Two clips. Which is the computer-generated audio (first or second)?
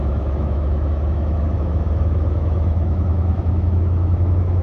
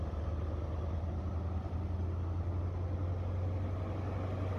first